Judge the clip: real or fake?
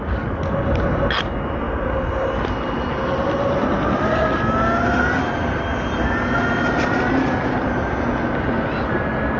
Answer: real